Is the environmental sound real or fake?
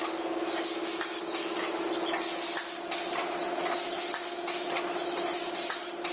real